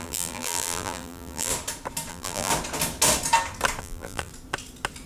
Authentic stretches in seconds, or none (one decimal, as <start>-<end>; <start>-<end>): 1.5-2.1; 2.5-3.8; 4.3-5.1